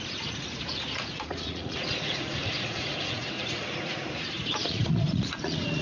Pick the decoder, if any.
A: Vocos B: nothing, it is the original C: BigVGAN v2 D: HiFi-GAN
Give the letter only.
A